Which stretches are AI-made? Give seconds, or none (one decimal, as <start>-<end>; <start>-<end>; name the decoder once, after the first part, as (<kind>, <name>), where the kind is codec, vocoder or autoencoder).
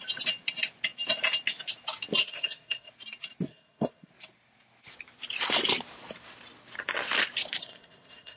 2.2-2.9 (codec, SNAC); 3.5-4.1; 7.6-8.4